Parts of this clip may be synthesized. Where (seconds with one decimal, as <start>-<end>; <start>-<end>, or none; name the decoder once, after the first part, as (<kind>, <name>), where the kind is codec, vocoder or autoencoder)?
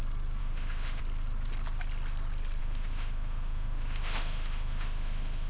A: 0.4-1.0 (autoencoder, DAC-VAE); 2.6-5.5